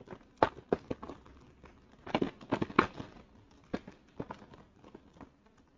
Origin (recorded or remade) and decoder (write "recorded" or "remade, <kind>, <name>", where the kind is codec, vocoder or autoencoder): recorded